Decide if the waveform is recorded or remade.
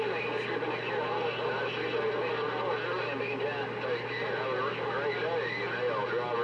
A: recorded